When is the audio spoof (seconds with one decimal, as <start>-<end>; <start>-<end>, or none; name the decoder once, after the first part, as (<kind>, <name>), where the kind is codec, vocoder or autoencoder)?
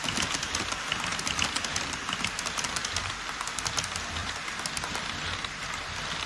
1.1-3.5 (vocoder, BigVGAN v2); 4.2-6.3